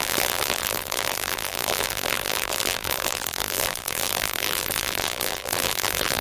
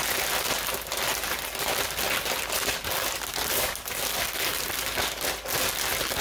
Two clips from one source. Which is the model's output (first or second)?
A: first